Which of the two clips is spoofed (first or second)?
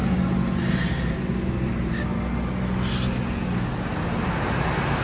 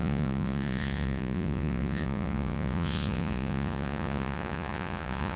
second